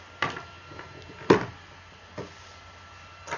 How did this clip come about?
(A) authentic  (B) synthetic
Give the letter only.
A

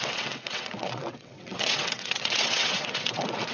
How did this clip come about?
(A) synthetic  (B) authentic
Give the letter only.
A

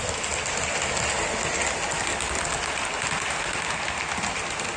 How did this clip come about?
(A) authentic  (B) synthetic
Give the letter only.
A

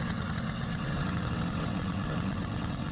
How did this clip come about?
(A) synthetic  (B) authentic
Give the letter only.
A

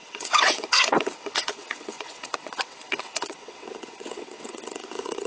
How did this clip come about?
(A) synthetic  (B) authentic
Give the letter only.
A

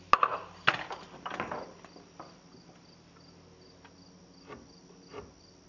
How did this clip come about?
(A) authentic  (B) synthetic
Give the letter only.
A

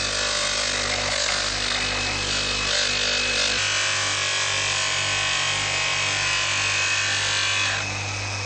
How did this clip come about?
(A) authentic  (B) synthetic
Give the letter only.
A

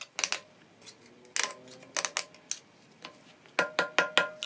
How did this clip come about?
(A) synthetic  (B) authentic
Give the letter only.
B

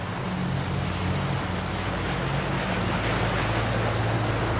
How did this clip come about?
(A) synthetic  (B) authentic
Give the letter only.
B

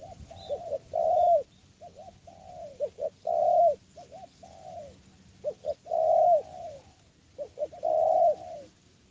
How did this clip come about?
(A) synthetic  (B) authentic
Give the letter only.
B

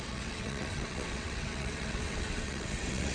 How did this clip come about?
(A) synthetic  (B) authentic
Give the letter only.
A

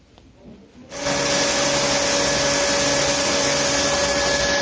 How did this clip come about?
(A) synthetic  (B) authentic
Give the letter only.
B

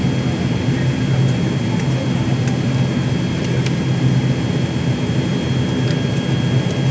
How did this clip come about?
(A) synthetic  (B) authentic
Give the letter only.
B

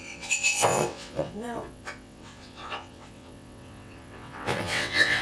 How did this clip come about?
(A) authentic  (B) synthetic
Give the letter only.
B